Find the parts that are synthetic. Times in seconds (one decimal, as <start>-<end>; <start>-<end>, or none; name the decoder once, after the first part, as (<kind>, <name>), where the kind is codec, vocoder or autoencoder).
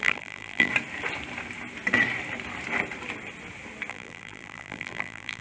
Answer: 0.0-0.7 (vocoder, BigVGAN v2); 3.9-5.4